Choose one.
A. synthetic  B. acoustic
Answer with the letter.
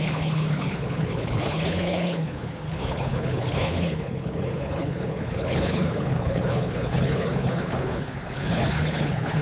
A